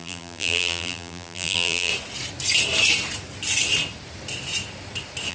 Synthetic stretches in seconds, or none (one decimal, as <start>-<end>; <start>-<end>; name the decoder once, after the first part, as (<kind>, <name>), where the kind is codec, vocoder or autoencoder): 0.0-1.9 (vocoder, BigVGAN v2)